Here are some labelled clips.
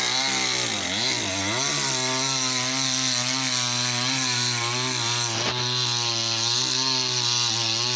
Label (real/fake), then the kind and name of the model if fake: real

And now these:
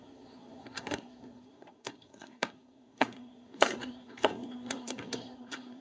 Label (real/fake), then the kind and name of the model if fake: fake, codec, SNAC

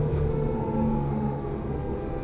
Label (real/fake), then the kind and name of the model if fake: fake, codec, SNAC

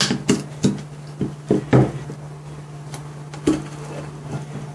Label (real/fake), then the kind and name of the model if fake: real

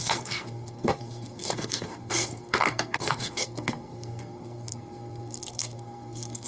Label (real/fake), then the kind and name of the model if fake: fake, codec, SNAC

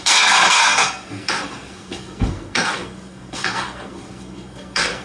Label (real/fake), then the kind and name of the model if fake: fake, codec, SNAC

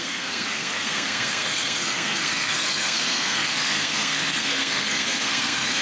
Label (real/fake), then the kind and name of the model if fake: fake, codec, SNAC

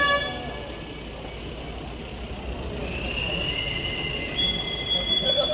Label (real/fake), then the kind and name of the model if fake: real